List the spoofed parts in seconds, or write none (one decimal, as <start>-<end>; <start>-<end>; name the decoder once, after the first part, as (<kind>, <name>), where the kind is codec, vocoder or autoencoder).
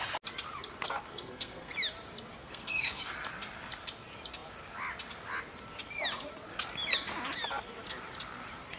1.1-1.7 (codec, SNAC); 2.4-3.0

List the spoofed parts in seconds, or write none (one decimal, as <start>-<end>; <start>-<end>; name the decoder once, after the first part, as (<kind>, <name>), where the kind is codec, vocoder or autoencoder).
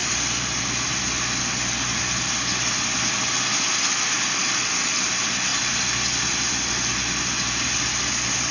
0.0-0.6 (vocoder, BigVGAN v2); 5.5-8.5